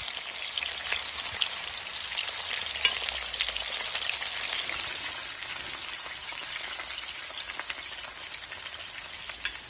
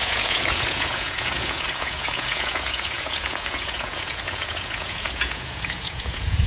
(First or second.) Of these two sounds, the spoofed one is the second